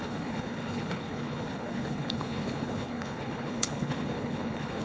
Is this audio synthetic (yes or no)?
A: yes